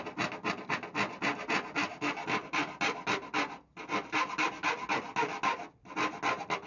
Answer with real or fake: real